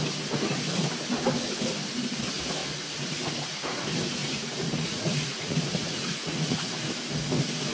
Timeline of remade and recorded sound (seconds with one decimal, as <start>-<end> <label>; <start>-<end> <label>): 0.0-4.2 recorded; 4.2-6.7 remade; 6.7-7.7 recorded